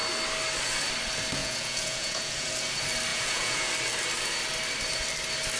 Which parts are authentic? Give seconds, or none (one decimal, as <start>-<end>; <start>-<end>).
0.0-1.4; 2.5-3.1; 3.7-5.6